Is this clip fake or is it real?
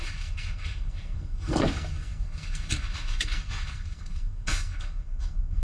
fake